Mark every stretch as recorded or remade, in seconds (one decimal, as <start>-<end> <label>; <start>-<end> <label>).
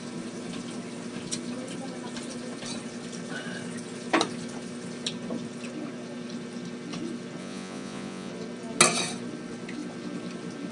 0.0-7.4 recorded; 7.4-8.3 remade; 8.3-10.7 recorded